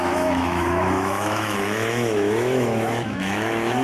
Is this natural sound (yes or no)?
no